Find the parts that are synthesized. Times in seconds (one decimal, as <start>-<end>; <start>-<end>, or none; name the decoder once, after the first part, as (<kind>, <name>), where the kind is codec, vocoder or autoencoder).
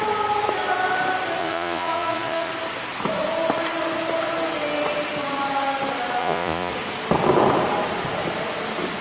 1.4-2.5 (vocoder, Vocos); 6.2-6.7